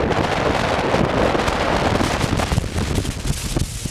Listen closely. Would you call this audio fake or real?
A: real